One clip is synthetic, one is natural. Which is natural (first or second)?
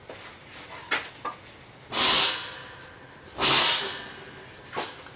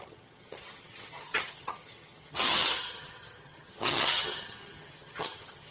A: first